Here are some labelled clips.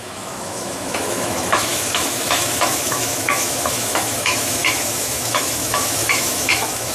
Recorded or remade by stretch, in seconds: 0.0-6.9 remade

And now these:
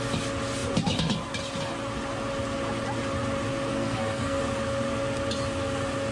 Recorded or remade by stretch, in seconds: 0.0-3.7 recorded; 3.7-4.4 remade; 4.4-6.1 recorded

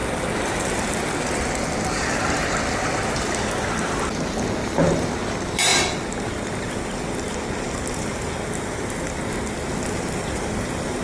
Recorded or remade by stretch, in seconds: 0.0-4.6 recorded; 4.6-5.1 remade; 5.1-11.0 recorded